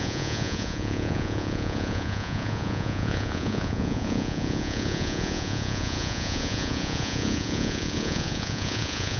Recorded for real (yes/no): no